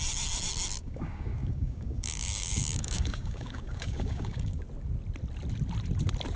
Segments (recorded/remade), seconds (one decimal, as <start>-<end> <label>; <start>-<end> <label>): 0.0-0.8 recorded; 0.8-4.6 remade; 4.6-6.4 recorded